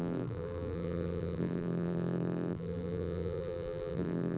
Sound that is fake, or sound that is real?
fake